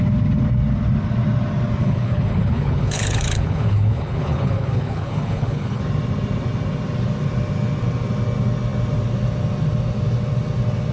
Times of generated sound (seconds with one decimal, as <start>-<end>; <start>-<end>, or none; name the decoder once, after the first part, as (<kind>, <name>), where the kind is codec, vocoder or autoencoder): 1.8-5.8 (codec, HILCodec)